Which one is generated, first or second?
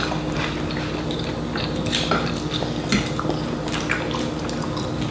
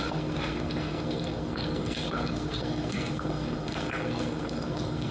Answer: second